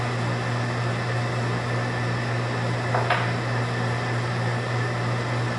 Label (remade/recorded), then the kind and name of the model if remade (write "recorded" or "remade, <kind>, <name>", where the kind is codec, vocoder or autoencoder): recorded